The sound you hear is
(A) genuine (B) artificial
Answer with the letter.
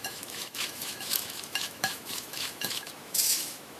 B